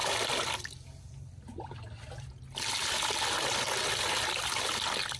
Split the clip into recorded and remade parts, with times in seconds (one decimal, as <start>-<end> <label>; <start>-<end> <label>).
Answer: 0.0-5.2 recorded